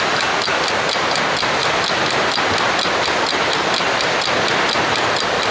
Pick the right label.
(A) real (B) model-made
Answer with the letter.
A